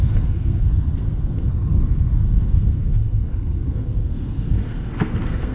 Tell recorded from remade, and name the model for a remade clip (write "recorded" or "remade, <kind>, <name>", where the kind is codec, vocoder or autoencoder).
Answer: remade, codec, SNAC